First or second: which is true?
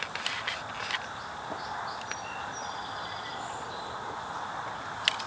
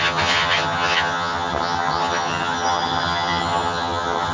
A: first